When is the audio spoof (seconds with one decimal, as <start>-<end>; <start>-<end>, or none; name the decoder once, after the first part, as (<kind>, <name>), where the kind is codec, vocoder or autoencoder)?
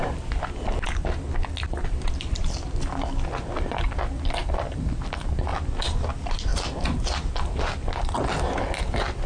4.4-5.0 (vocoder, BigVGAN v2)